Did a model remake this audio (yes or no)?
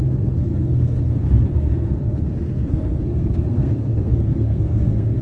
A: yes